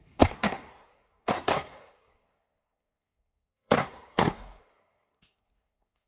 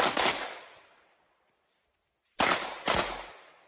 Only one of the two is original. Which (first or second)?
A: second